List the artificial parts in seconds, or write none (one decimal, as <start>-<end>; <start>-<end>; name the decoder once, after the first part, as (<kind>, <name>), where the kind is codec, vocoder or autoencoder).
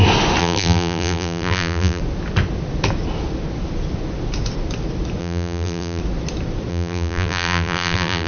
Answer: 0.4-2.0 (vocoder, BigVGAN v2); 5.2-6.0; 6.7-8.3